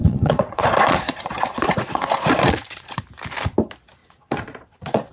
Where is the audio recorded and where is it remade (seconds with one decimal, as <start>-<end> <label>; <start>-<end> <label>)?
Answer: 0.0-3.0 remade; 3.0-4.0 recorded; 4.0-5.1 remade